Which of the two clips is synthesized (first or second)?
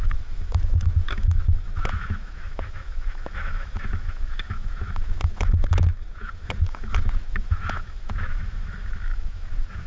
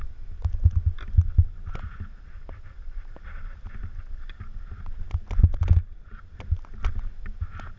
first